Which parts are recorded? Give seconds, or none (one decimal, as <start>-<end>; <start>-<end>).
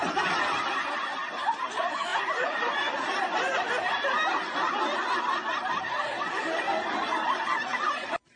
0.0-2.1; 3.7-8.4